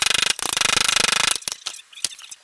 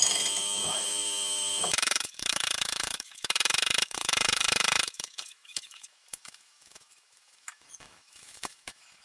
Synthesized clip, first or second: second